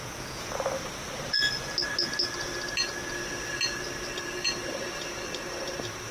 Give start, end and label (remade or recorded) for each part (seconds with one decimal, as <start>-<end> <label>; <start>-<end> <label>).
0.0-0.6 remade; 0.6-6.1 recorded